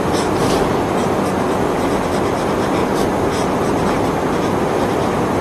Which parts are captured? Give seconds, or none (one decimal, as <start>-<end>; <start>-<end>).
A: 0.0-5.4